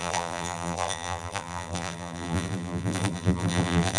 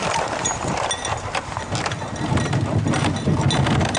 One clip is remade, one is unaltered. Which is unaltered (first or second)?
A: second